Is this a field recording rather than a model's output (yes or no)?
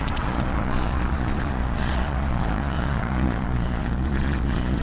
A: no